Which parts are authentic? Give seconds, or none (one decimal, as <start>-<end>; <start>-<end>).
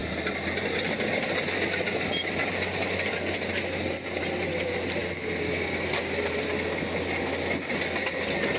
0.0-8.6